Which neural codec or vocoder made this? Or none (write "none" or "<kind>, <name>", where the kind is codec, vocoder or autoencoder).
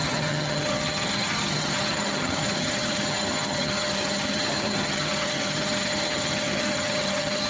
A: vocoder, HiFi-GAN